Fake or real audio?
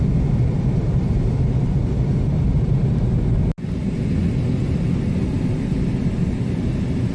real